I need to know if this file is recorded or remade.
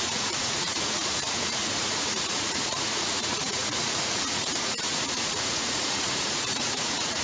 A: remade